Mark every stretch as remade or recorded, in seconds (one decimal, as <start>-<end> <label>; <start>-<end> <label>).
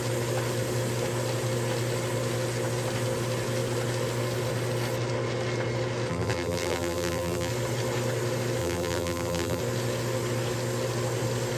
0.0-6.1 recorded; 6.1-7.5 remade; 7.5-8.6 recorded; 8.6-9.6 remade; 9.6-11.6 recorded